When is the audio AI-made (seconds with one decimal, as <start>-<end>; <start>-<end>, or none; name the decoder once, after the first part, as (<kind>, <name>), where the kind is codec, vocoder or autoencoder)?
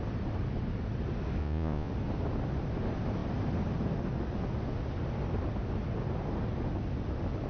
1.4-1.9 (vocoder, Vocos)